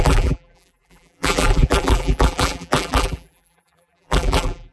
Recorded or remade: remade